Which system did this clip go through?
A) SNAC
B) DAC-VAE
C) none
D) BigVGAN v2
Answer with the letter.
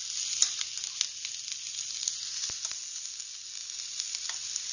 C